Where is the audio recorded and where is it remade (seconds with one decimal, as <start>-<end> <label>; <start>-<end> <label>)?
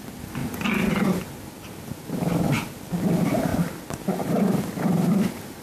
0.0-5.6 recorded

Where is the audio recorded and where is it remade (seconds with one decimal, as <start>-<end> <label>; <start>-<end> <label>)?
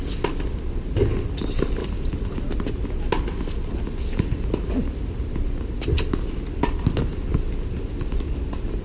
0.0-8.8 recorded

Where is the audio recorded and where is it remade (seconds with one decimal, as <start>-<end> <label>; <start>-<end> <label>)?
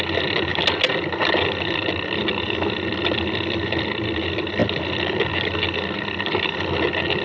0.0-7.2 recorded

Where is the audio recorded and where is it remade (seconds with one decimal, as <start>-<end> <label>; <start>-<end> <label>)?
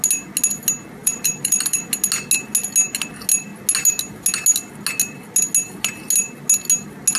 0.0-1.0 recorded; 1.0-1.8 remade; 1.8-7.2 recorded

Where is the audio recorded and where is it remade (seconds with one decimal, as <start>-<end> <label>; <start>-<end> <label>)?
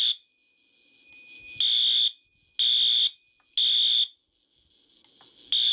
0.0-5.7 recorded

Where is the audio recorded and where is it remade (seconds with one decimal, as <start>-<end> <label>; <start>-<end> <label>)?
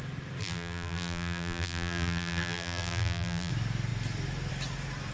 0.0-0.4 recorded; 0.4-3.5 remade; 3.5-5.1 recorded